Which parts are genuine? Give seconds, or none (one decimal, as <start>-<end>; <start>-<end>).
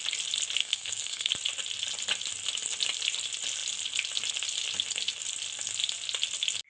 0.0-0.6; 1.3-6.7